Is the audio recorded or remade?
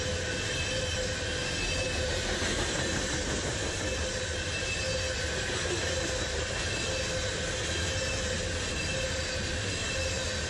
recorded